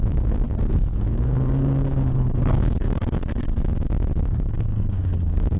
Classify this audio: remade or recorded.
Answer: remade